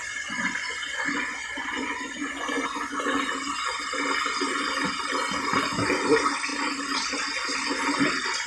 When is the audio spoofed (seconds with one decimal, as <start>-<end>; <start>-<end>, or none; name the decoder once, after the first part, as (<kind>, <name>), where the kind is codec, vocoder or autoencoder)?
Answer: 0.0-3.2 (vocoder, Vocos)